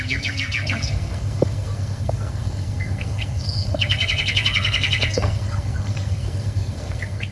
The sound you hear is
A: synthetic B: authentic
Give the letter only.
A